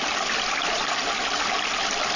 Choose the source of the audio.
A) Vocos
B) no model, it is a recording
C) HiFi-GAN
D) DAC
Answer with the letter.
B